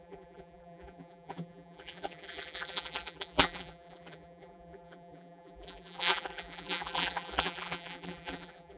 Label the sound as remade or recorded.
remade